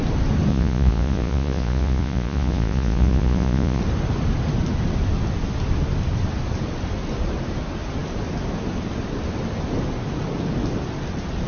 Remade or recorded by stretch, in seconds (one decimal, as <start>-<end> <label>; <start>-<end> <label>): 0.0-0.5 recorded; 0.5-3.8 remade; 3.8-11.5 recorded